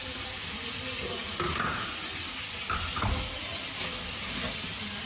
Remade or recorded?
recorded